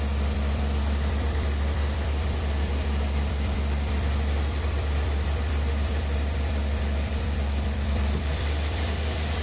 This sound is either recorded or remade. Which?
remade